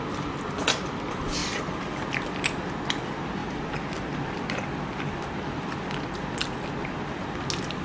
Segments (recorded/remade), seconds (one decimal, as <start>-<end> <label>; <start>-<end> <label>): 0.0-1.4 recorded; 1.4-2.1 remade; 2.1-3.4 recorded; 3.4-6.3 remade; 6.3-7.8 recorded